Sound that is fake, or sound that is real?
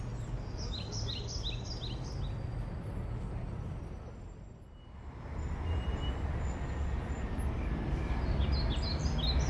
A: real